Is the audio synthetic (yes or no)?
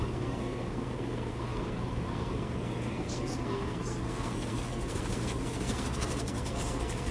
yes